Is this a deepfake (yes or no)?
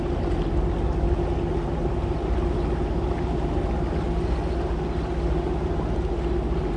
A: no